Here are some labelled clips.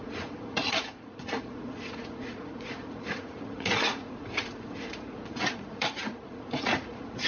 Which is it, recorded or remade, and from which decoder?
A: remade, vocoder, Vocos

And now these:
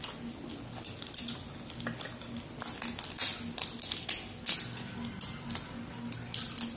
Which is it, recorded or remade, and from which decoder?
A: recorded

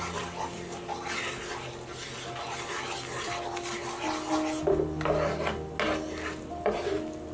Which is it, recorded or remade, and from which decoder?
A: recorded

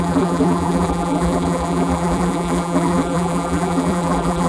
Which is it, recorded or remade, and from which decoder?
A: remade, vocoder, BigVGAN v2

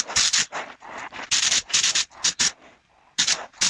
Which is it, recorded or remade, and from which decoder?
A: remade, vocoder, BigVGAN v2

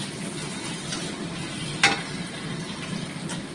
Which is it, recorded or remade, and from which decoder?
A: recorded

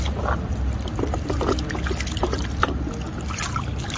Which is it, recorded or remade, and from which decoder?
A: recorded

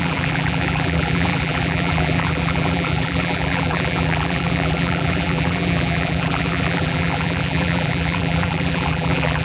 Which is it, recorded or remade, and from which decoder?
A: remade, vocoder, BigVGAN v2